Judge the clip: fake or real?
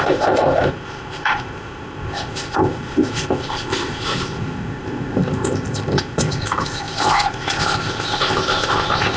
fake